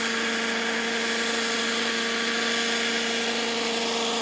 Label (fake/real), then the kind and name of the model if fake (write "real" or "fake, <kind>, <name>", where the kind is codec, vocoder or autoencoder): real